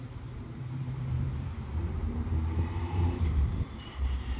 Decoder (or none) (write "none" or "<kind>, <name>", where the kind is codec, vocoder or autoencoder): vocoder, BigVGAN v2